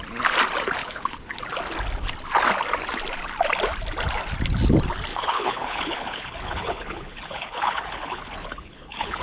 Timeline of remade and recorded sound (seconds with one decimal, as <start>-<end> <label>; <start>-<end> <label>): 0.0-0.8 recorded; 0.8-1.4 remade; 1.4-5.1 recorded; 5.1-9.2 remade